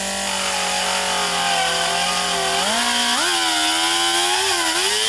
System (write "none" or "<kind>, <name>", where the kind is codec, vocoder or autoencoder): none